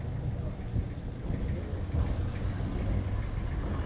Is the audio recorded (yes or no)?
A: yes